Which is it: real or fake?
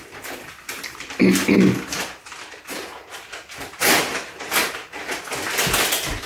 real